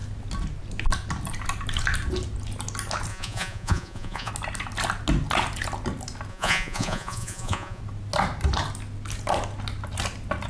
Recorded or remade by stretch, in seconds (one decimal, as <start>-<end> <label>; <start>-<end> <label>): 0.0-3.1 recorded; 3.1-4.3 remade; 4.3-6.3 recorded; 6.3-7.8 remade; 7.8-10.5 recorded